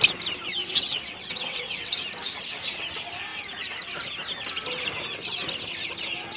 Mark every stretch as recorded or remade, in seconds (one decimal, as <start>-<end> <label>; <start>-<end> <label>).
0.0-0.6 recorded; 0.6-1.9 remade; 1.9-6.4 recorded